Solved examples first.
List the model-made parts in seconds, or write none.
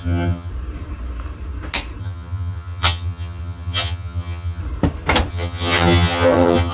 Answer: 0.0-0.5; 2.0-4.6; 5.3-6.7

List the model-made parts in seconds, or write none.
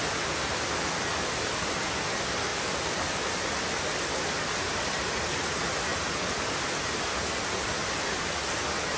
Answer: none